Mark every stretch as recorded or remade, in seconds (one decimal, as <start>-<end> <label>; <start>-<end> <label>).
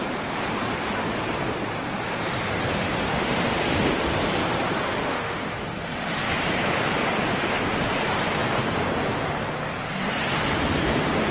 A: 0.0-3.1 recorded; 3.1-3.6 remade; 3.6-5.0 recorded; 5.0-5.9 remade; 5.9-11.3 recorded